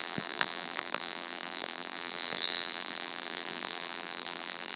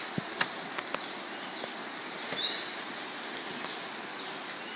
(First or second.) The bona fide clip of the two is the second